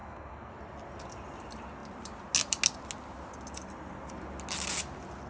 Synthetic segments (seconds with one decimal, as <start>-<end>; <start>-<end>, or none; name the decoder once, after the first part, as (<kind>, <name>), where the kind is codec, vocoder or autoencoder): 0.0-0.5 (codec, SNAC)